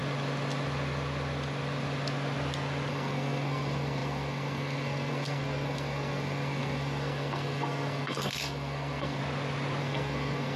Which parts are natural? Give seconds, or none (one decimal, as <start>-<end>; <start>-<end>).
0.0-2.9; 9.2-9.8

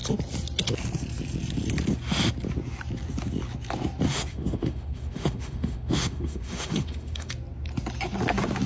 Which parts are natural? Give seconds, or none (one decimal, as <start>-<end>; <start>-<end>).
0.0-4.3; 7.3-8.7